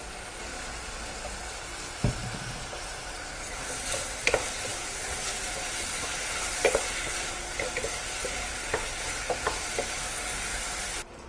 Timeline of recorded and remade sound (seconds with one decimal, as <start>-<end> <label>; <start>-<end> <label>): 0.0-11.3 recorded